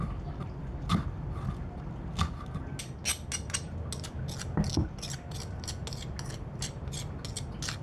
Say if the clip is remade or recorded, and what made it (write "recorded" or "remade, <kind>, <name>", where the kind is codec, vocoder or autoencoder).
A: recorded